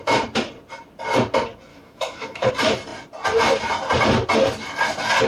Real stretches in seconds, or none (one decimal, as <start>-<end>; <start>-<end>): 0.0-1.7; 2.5-5.3